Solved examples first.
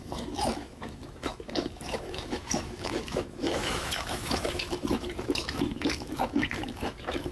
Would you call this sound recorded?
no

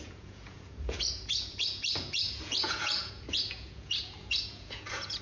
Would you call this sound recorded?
no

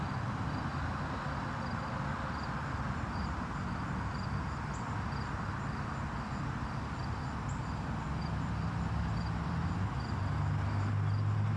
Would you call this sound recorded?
yes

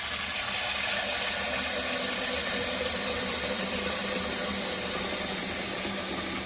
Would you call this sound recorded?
yes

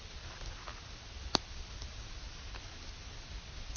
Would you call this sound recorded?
yes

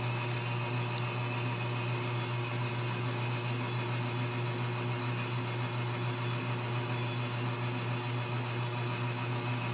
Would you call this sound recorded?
yes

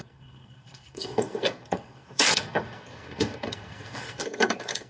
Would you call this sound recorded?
no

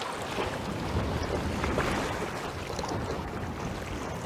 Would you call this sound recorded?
yes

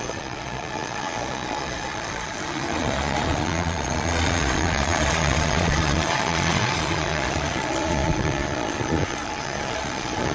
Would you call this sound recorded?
no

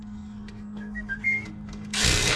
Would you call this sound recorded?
no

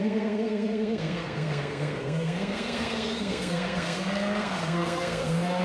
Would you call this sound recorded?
no